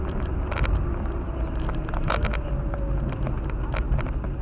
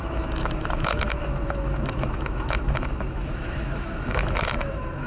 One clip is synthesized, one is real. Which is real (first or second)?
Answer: first